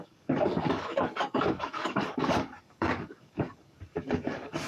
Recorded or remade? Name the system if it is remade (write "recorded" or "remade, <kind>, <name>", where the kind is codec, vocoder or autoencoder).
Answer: remade, codec, DAC